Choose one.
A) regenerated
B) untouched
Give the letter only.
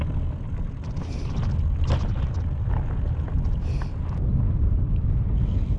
B